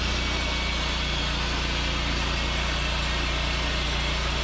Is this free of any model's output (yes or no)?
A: yes